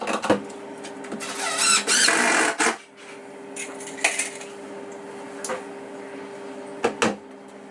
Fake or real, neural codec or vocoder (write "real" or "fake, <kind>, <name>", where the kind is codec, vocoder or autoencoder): real